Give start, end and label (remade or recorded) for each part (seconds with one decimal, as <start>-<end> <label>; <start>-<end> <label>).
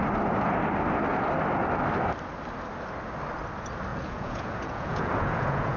0.0-3.9 recorded; 3.9-5.8 remade